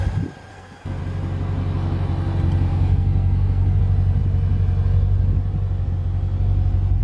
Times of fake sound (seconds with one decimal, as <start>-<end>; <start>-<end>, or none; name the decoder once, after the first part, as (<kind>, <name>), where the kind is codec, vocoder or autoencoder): 0.5-1.0 (codec, SNAC); 2.7-3.8